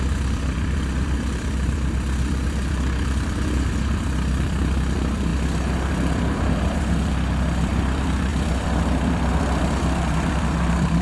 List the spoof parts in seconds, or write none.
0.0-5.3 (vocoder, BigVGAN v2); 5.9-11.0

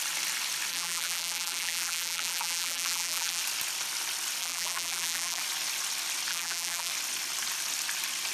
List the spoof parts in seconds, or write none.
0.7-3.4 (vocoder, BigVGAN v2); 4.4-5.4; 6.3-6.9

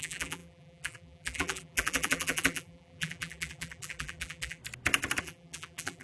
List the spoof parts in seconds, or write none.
0.0-4.6 (vocoder, BigVGAN v2); 5.2-6.0

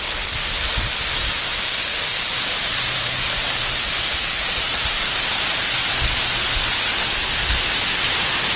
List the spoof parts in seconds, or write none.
1.5-4.7 (vocoder, BigVGAN v2)

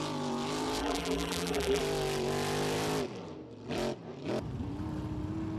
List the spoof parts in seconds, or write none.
0.8-1.8 (vocoder, BigVGAN v2)

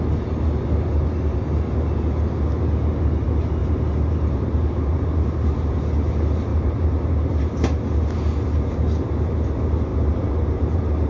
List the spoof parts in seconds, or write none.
3.6-5.8 (vocoder, BigVGAN v2); 6.5-7.4; 9.9-11.1

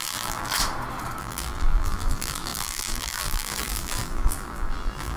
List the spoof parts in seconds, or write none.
0.0-0.5 (vocoder, BigVGAN v2); 1.2-5.2

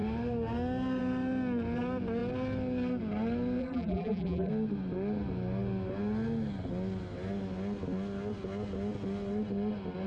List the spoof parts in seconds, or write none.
3.6-4.5 (vocoder, BigVGAN v2)